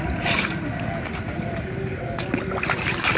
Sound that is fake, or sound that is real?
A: real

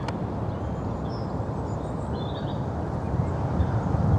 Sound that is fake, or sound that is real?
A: real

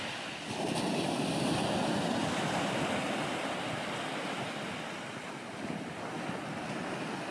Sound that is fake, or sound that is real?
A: real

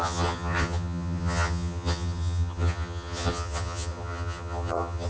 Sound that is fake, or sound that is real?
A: fake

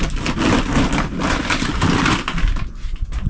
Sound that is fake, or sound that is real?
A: real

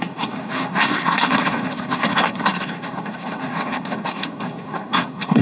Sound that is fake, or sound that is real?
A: fake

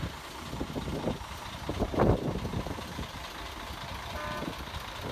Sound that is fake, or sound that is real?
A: real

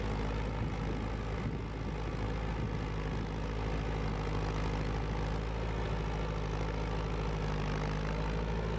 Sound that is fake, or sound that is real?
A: real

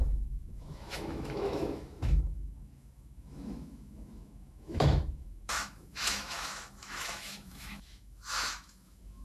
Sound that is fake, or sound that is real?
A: fake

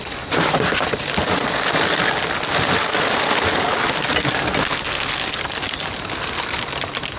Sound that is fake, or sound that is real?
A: real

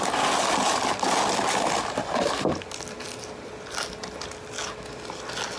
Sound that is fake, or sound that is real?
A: real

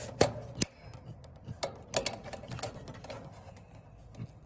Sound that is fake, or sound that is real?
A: real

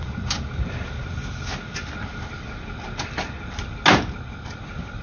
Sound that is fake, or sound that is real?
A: real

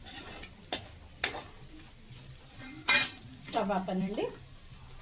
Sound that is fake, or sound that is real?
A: fake